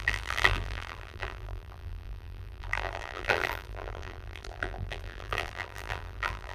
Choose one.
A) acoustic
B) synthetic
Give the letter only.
B